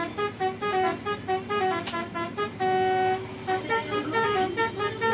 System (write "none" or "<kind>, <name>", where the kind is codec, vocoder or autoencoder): none